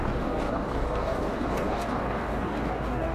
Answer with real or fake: fake